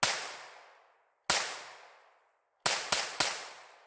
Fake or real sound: real